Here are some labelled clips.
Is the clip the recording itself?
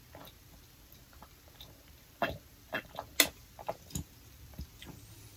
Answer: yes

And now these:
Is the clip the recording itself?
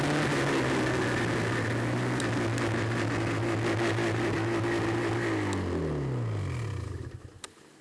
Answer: yes